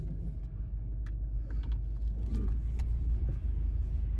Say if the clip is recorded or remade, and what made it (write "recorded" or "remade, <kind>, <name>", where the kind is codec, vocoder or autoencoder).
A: recorded